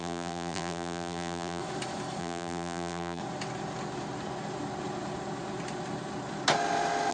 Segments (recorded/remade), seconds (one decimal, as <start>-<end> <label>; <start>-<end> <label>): 0.0-1.6 remade; 1.6-2.2 recorded; 2.2-3.2 remade; 3.2-7.1 recorded